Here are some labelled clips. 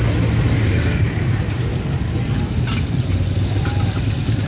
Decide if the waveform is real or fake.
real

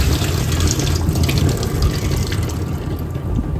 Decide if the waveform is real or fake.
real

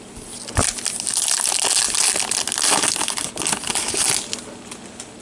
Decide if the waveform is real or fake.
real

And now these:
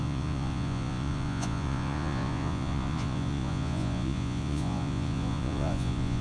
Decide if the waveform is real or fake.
fake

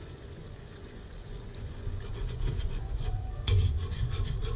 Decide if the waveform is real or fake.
fake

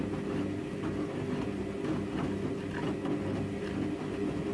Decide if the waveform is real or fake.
real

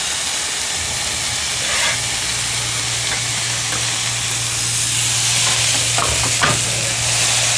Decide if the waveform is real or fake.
real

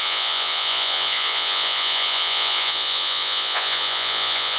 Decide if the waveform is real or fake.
fake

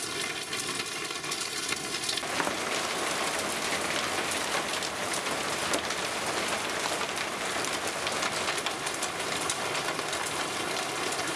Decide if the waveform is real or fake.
real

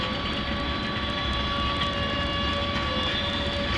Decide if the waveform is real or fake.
real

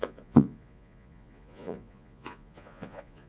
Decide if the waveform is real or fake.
fake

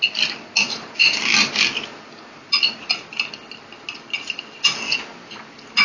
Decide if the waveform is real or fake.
real